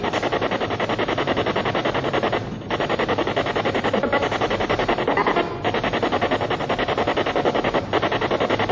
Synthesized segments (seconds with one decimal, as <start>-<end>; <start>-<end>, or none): none